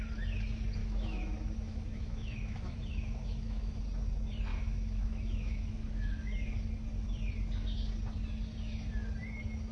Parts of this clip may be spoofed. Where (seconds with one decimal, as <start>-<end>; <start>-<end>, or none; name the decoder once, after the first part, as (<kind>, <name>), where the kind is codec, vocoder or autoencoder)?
0.8-3.8 (autoencoder, DAC-VAE); 4.5-6.3